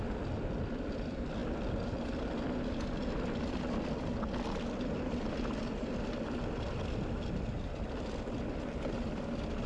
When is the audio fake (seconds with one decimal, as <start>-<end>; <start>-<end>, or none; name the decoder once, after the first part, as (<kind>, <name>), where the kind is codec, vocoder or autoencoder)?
none